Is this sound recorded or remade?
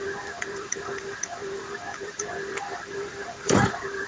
remade